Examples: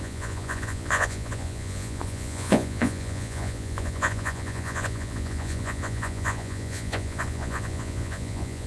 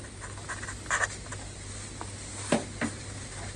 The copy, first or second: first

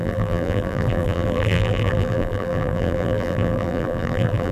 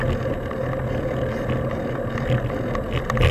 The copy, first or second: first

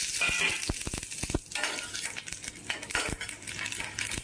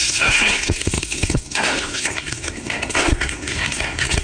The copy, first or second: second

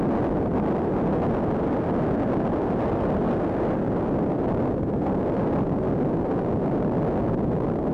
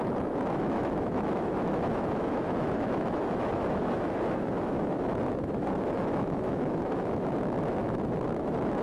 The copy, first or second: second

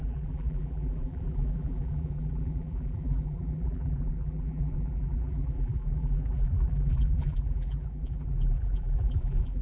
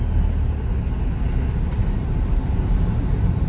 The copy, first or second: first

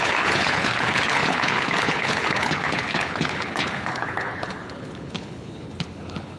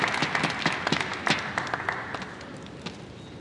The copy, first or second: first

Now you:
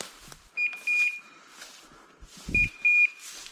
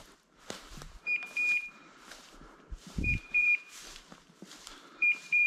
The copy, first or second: second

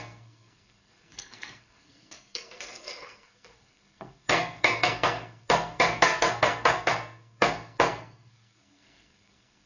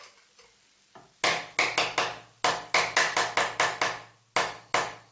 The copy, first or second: first